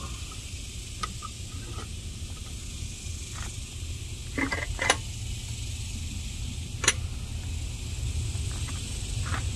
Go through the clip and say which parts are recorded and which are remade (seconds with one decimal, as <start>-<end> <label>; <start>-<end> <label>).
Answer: 0.0-9.6 recorded